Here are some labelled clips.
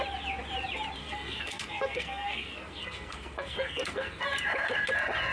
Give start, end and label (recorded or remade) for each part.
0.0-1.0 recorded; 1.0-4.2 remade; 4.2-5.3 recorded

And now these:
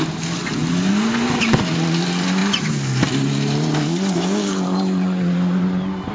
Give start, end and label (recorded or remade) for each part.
0.0-6.1 recorded

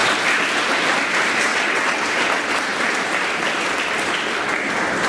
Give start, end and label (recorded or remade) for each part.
0.0-1.5 recorded; 1.5-2.0 remade; 2.0-5.1 recorded

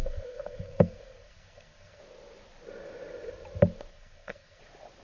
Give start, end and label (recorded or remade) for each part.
0.0-2.0 remade; 2.0-3.9 recorded; 3.9-4.6 remade; 4.6-5.0 recorded

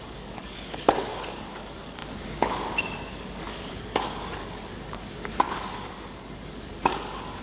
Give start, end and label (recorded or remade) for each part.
0.0-7.4 remade

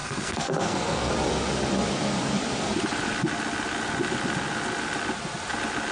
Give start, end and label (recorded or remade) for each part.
0.0-1.1 remade; 1.1-5.9 recorded

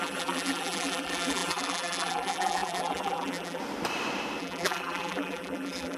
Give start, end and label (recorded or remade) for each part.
0.0-3.6 remade; 3.6-4.4 recorded; 4.4-6.0 remade